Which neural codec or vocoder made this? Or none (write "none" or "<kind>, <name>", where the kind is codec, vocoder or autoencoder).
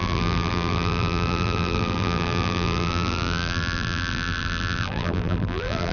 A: vocoder, BigVGAN v2